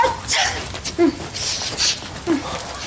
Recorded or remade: recorded